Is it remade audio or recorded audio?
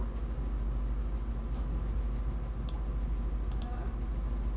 recorded